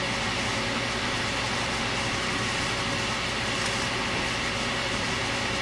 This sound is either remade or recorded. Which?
recorded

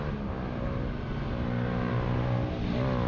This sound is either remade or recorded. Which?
recorded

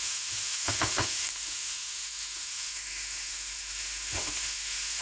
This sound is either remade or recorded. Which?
remade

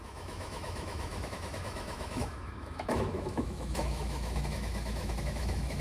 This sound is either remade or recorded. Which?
remade